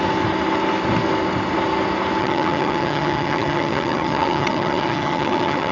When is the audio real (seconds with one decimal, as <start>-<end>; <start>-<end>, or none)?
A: 0.0-2.2